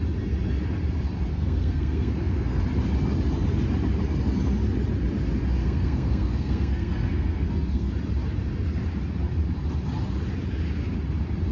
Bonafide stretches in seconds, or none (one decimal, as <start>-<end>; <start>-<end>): 0.0-1.3; 2.6-5.6; 7.9-11.5